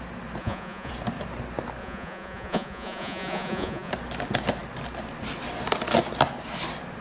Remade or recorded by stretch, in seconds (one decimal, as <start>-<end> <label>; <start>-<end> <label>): 0.0-0.4 recorded; 0.4-0.9 remade; 0.9-1.8 recorded; 1.8-3.9 remade; 3.9-7.0 recorded